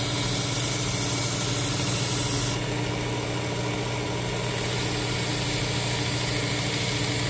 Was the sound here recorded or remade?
recorded